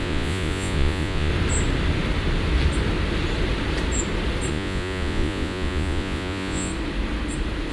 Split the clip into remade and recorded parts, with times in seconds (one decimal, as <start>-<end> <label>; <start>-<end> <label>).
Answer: 0.0-1.3 remade; 1.3-4.5 recorded; 4.5-6.7 remade; 6.7-7.7 recorded